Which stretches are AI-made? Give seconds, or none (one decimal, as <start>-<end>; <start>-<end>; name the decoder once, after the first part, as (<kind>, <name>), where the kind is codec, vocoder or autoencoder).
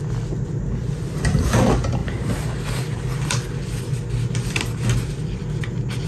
none